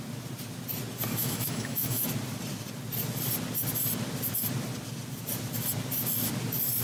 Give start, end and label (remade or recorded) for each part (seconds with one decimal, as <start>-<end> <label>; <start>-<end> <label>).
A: 0.0-1.2 recorded; 1.2-2.0 remade; 2.0-6.8 recorded